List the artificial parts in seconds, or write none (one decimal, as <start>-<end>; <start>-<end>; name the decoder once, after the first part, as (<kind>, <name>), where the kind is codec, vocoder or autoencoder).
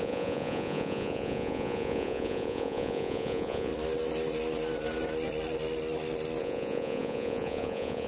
0.0-3.7 (vocoder, Vocos); 6.4-8.1